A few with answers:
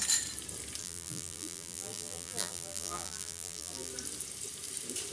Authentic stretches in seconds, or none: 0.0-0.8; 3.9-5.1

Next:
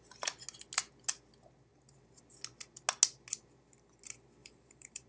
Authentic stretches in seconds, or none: 0.0-1.7; 2.2-4.4

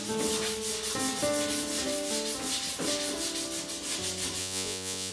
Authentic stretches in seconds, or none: 0.0-4.4

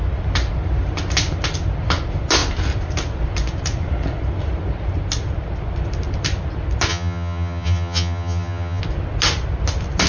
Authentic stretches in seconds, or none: 0.0-6.9; 8.8-10.1

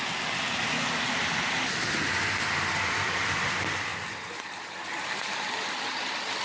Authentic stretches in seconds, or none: 0.0-6.4

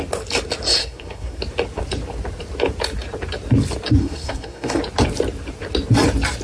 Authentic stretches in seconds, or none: 0.0-0.8; 1.4-4.0; 4.8-6.4

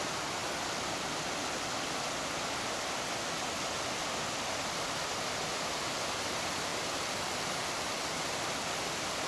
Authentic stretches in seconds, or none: 0.0-9.3